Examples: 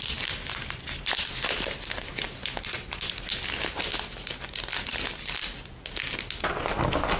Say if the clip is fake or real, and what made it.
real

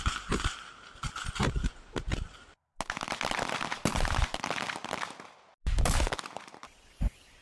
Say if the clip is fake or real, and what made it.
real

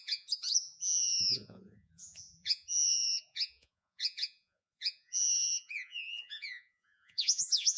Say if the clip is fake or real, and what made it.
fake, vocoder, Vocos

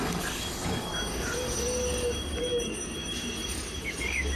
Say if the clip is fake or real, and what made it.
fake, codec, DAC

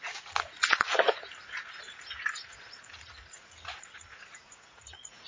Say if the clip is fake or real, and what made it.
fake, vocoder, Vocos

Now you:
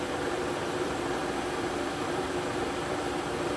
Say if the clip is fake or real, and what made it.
fake, vocoder, BigVGAN v2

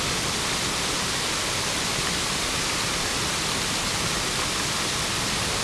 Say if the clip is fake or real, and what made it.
real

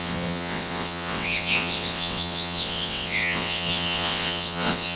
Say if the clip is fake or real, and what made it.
fake, vocoder, WaveNeXt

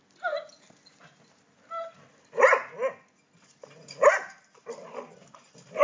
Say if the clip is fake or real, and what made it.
real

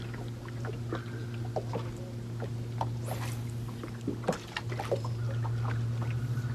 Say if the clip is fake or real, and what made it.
real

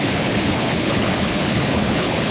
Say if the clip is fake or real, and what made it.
fake, codec, HILCodec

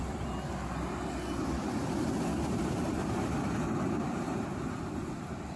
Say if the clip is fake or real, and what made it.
real